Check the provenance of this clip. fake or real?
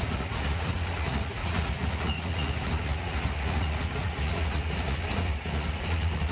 fake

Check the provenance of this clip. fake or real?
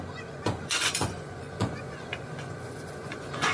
fake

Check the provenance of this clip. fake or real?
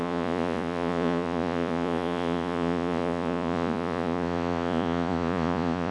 fake